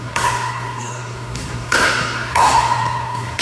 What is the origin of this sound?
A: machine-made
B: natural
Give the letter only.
A